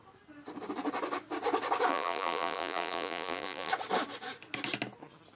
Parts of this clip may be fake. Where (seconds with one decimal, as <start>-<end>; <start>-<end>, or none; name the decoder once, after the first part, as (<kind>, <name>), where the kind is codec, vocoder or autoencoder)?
1.9-3.7 (vocoder, BigVGAN v2)